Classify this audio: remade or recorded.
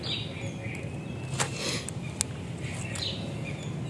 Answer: recorded